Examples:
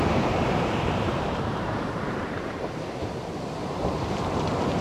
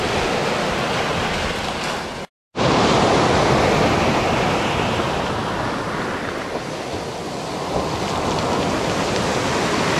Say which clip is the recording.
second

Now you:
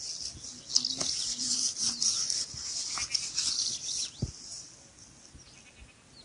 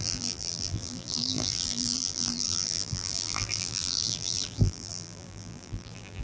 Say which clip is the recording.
first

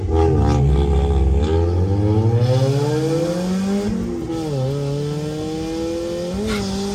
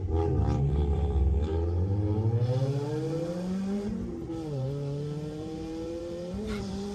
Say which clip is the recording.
first